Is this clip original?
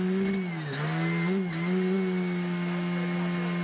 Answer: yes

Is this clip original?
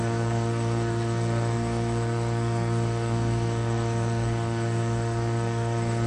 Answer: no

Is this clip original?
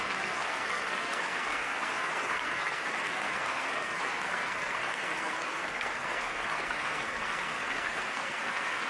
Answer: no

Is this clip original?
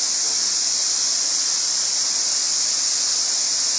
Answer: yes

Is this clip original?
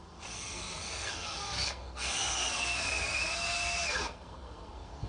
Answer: no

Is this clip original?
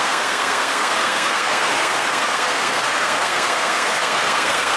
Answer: no